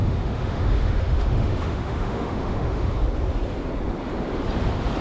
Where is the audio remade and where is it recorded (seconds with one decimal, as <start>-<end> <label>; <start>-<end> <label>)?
0.0-2.9 remade; 2.9-5.0 recorded